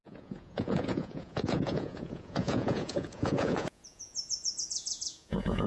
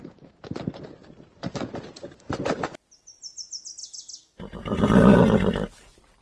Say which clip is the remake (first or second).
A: first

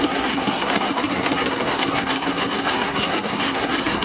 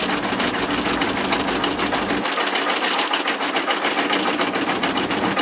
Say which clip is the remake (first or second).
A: first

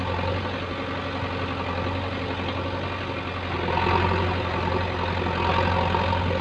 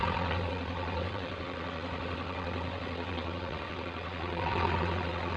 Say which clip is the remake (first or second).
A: second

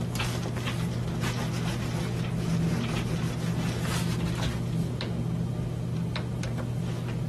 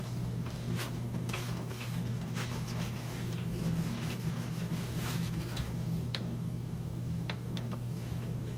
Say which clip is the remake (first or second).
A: second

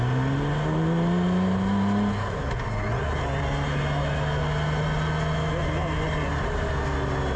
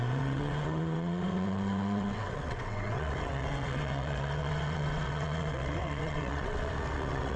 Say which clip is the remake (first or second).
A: second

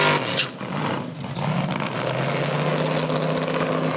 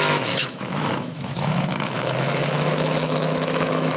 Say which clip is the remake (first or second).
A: second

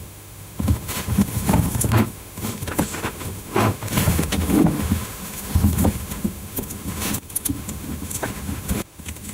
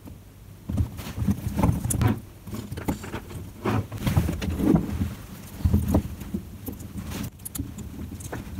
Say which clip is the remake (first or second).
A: first